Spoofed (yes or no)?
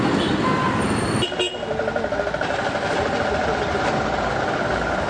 no